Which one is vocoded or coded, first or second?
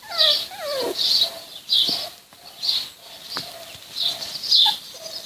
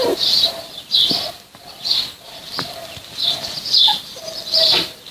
second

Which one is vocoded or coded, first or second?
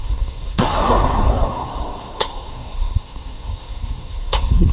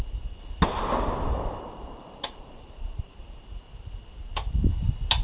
first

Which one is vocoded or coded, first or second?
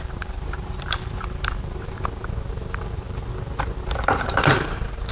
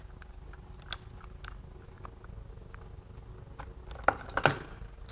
first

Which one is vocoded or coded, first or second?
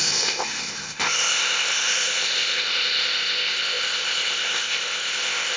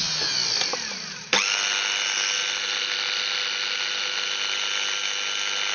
first